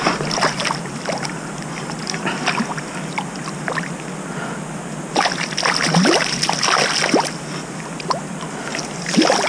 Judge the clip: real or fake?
real